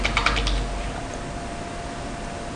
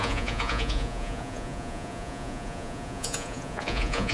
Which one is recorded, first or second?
first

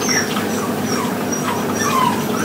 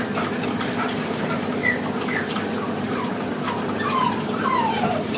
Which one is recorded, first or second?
first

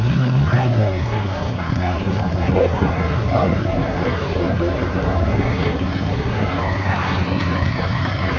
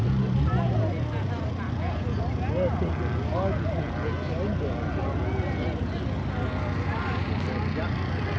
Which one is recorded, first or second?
second